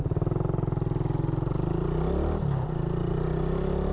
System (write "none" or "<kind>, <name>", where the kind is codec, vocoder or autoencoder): none